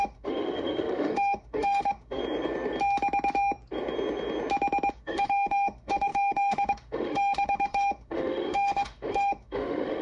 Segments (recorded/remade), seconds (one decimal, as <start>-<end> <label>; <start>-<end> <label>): 0.0-2.2 remade; 2.2-4.9 recorded; 4.9-10.0 remade